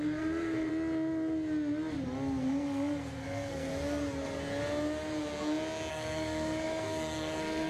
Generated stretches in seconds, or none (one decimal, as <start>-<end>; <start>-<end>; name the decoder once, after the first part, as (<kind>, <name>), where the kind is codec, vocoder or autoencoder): 0.0-0.7 (codec, SNAC); 2.4-3.7; 5.9-7.7

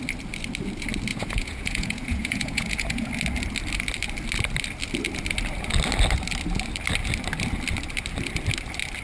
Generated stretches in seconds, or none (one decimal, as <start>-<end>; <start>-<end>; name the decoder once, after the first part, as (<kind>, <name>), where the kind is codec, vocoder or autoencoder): 1.1-3.1 (vocoder, Vocos)

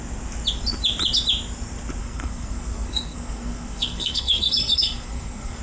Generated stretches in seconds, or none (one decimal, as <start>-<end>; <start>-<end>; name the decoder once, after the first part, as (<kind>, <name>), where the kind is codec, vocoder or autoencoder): 2.0-5.6 (codec, SNAC)

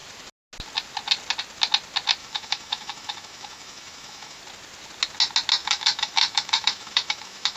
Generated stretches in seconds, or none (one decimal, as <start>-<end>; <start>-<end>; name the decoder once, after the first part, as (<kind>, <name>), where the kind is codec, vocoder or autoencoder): 2.2-4.4 (autoencoder, DAC-VAE); 5.6-7.6

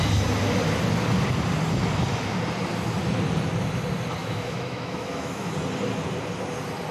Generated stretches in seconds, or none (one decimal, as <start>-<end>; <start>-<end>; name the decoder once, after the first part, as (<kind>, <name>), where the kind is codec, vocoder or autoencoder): 4.2-5.5 (autoencoder, DAC-VAE)

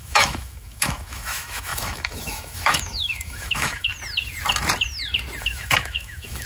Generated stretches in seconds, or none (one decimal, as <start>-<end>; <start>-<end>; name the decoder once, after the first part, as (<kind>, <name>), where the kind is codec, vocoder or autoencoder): 0.0-3.9 (autoencoder, DAC-VAE); 5.4-6.5

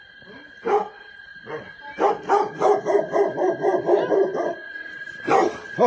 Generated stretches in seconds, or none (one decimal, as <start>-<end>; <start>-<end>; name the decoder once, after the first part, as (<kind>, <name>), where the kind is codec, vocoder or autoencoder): 0.0-1.3 (vocoder, BigVGAN v2); 2.1-5.9